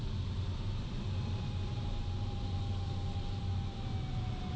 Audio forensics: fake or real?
real